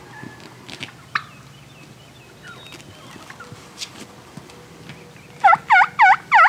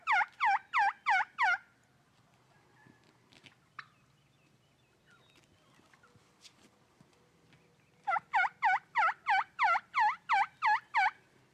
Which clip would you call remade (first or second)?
second